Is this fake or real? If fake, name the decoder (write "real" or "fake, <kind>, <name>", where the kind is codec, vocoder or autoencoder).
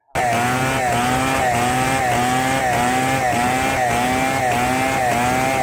real